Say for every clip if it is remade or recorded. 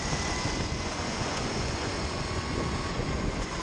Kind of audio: remade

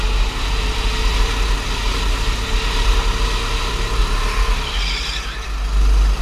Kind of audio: recorded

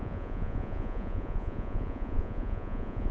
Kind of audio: remade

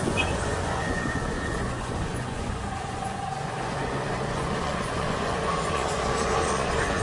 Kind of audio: remade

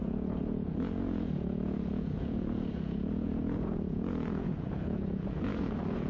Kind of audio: remade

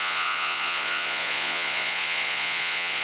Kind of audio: remade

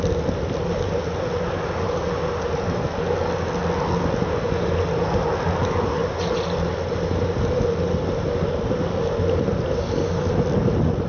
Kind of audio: recorded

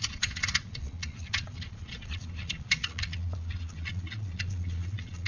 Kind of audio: remade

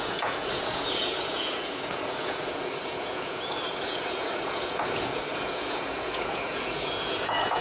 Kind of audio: remade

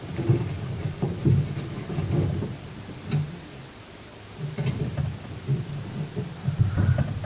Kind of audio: recorded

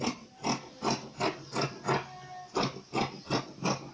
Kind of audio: recorded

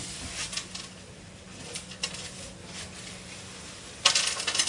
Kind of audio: recorded